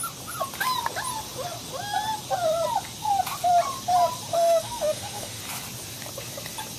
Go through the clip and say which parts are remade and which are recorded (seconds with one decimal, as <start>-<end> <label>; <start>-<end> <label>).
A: 0.0-4.3 recorded; 4.3-5.4 remade; 5.4-6.8 recorded